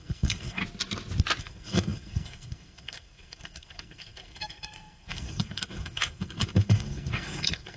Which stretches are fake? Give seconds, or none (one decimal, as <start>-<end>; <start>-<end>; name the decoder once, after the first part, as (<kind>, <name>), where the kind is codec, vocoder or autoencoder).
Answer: 0.0-0.6 (codec, SNAC); 1.4-7.8